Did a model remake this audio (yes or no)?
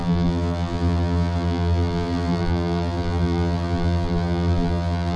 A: yes